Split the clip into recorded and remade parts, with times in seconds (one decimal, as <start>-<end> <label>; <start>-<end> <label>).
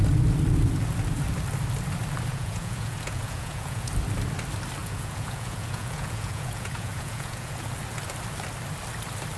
0.0-2.3 recorded; 2.3-3.9 remade; 3.9-4.8 recorded; 4.8-7.7 remade; 7.7-9.4 recorded